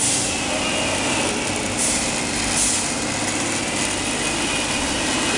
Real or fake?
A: real